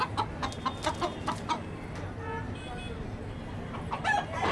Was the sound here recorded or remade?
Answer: recorded